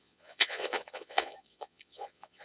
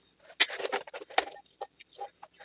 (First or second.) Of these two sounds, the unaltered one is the second